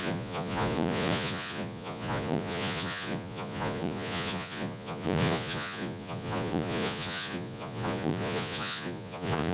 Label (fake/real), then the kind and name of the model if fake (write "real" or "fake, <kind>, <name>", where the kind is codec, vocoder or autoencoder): fake, vocoder, Vocos